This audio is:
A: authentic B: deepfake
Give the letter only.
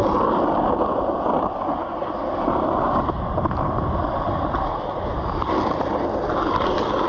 A